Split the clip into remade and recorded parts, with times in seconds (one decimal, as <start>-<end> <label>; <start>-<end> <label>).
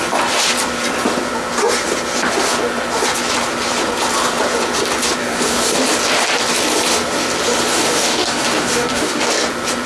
0.0-5.2 recorded; 5.2-5.8 remade; 5.8-7.7 recorded; 7.7-9.2 remade; 9.2-9.9 recorded